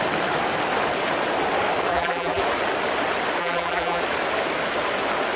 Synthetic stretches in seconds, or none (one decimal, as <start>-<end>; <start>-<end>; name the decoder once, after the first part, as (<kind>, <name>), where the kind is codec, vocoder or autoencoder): 1.9-2.4 (vocoder, BigVGAN v2); 3.4-4.0